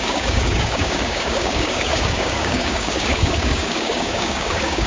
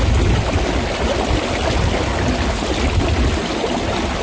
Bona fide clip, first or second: second